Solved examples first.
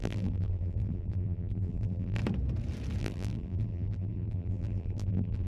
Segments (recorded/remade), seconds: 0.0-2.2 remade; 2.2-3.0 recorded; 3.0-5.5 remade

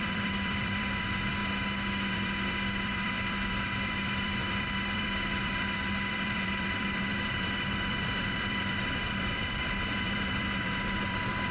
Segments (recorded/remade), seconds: 0.0-1.4 remade; 1.4-2.1 recorded; 2.1-11.5 remade

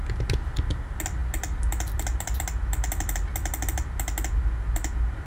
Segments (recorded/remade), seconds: 0.0-5.3 recorded